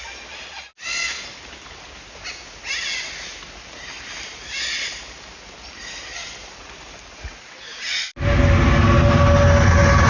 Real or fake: real